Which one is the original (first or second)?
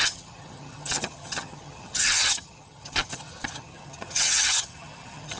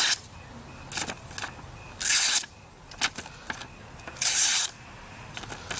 second